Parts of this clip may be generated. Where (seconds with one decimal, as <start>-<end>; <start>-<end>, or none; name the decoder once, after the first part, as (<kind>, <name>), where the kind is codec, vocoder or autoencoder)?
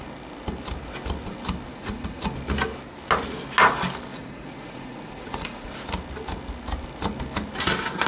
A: 1.7-2.3 (vocoder, Vocos); 4.1-5.7